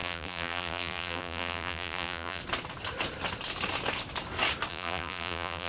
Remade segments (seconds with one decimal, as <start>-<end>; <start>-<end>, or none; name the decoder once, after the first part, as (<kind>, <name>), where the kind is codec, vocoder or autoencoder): 0.0-2.4 (vocoder, BigVGAN v2); 4.7-5.7